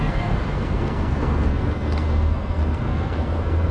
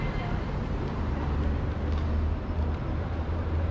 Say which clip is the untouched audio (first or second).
second